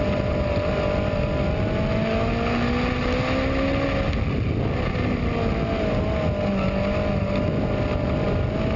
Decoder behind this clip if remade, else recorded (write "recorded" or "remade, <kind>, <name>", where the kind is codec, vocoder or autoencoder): recorded